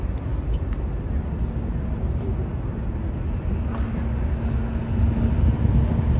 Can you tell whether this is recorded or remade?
recorded